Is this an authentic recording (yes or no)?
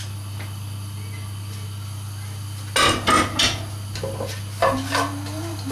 yes